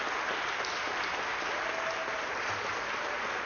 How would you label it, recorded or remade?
recorded